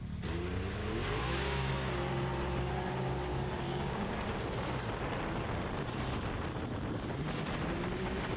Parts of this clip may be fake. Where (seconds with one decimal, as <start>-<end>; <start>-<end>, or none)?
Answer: 0.8-1.7; 3.3-4.1